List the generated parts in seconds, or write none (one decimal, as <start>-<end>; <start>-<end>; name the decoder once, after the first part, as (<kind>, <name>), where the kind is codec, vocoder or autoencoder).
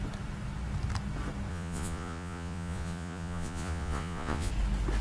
1.5-4.5 (vocoder, Vocos)